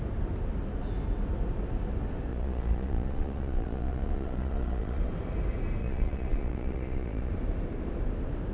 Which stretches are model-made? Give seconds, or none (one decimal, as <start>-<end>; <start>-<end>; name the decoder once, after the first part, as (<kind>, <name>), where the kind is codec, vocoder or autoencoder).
2.3-5.0 (vocoder, Vocos); 5.8-7.3